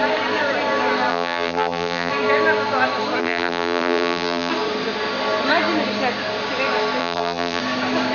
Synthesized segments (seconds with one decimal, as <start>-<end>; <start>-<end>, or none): 1.1-2.1; 3.2-4.5; 7.0-7.6